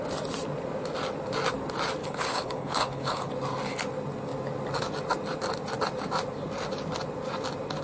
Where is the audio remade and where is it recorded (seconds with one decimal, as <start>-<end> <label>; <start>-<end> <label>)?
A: 0.0-2.0 recorded; 2.0-3.3 remade; 3.3-7.8 recorded